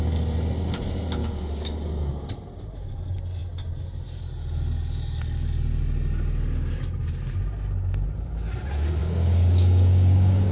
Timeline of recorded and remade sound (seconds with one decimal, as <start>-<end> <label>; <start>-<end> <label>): 0.0-1.2 recorded; 1.2-2.1 remade; 2.1-9.0 recorded; 9.0-10.5 remade

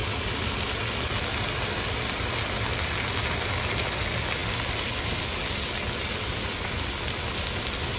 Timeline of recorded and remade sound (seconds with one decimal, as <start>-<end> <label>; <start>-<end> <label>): 0.0-8.0 recorded

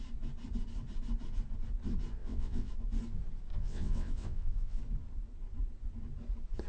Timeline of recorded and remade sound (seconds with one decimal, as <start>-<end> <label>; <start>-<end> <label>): 0.0-2.2 recorded; 2.2-2.7 remade; 2.7-3.5 recorded; 3.5-4.8 remade; 4.8-6.7 recorded

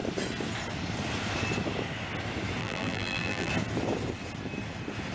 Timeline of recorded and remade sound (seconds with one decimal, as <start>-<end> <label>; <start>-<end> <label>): 0.0-2.6 recorded; 2.6-3.5 remade; 3.5-5.1 recorded

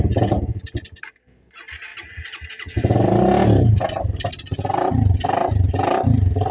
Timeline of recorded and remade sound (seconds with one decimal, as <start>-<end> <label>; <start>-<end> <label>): 0.0-6.5 recorded

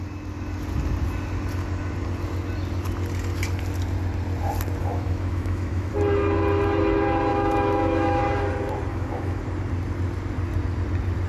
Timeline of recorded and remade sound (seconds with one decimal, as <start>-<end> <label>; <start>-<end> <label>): 0.0-4.8 recorded; 4.8-5.9 remade; 5.9-7.3 recorded; 7.3-8.2 remade; 8.2-8.9 recorded; 8.9-9.4 remade; 9.4-11.3 recorded